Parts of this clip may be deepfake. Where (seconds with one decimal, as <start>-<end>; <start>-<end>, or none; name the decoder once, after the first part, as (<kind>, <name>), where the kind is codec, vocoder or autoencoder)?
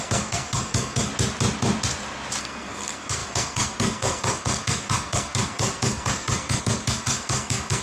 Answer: 0.0-1.1 (codec, SNAC); 2.4-7.8